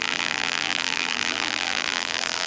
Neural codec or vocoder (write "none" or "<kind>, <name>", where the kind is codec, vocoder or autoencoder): vocoder, BigVGAN v2